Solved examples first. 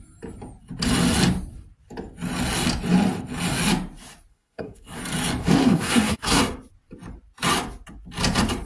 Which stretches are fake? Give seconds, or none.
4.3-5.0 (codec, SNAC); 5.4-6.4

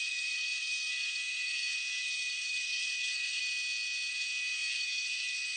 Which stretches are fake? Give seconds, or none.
0.0-3.4 (codec, SNAC); 4.1-5.6

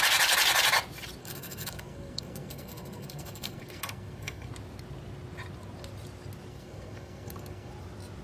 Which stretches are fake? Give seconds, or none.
1.2-4.5 (codec, SNAC); 6.5-7.7

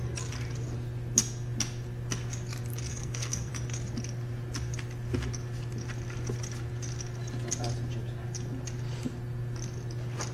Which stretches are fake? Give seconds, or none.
2.9-3.5 (codec, SNAC)

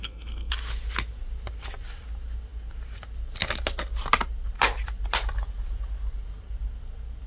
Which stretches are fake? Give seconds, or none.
0.0-0.5 (codec, SNAC)

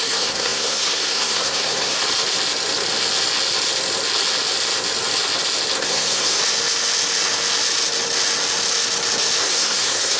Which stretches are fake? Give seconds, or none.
0.0-2.0 (codec, SNAC); 5.8-6.4; 9.4-10.2

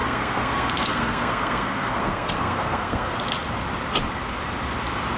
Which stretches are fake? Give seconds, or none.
0.0-3.1 (codec, SNAC)

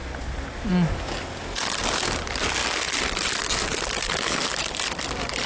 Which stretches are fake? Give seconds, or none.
none